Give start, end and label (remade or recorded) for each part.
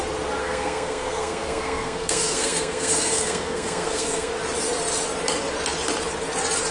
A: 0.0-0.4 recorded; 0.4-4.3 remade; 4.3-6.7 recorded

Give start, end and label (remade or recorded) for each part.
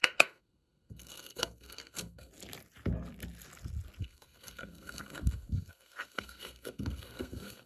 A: 0.0-2.3 remade; 2.3-4.0 recorded; 4.0-7.7 remade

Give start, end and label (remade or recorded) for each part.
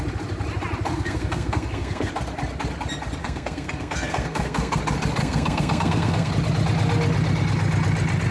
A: 0.0-0.9 recorded; 0.9-2.1 remade; 2.1-3.2 recorded; 3.2-4.8 remade; 4.8-5.2 recorded; 5.2-6.3 remade; 6.3-8.3 recorded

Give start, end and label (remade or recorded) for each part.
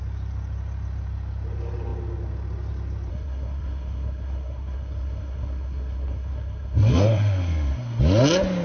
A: 0.0-3.1 recorded; 3.1-8.0 remade; 8.0-8.6 recorded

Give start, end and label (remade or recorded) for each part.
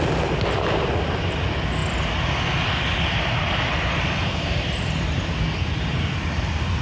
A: 0.0-6.8 recorded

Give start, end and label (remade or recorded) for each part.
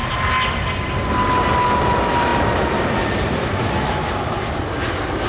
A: 0.0-5.3 recorded